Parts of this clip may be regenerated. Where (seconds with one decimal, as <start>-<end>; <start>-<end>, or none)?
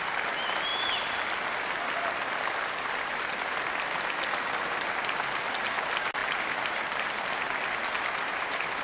none